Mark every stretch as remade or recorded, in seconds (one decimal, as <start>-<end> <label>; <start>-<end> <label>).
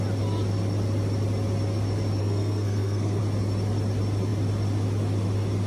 0.0-2.2 recorded; 2.2-3.2 remade; 3.2-5.7 recorded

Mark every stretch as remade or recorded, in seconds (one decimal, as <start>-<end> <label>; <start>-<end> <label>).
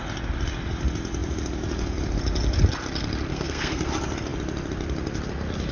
0.0-3.3 recorded; 3.3-3.9 remade; 3.9-5.7 recorded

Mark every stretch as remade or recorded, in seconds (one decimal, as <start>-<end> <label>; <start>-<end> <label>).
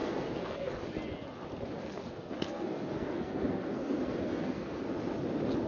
0.0-0.7 remade; 0.7-2.0 recorded; 2.0-4.8 remade; 4.8-5.7 recorded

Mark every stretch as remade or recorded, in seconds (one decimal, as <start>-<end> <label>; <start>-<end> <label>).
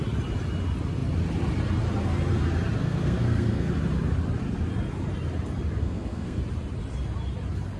0.0-2.8 recorded; 2.8-3.7 remade; 3.7-5.8 recorded; 5.8-6.4 remade; 6.4-7.8 recorded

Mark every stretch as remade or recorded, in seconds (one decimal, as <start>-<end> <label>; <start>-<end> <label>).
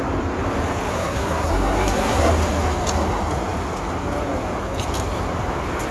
0.0-0.9 recorded; 0.9-2.3 remade; 2.3-5.9 recorded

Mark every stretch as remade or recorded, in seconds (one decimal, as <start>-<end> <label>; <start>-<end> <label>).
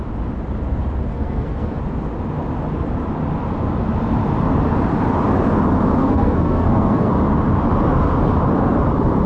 0.0-1.1 recorded; 1.1-1.8 remade; 1.8-6.0 recorded; 6.0-7.1 remade; 7.1-9.3 recorded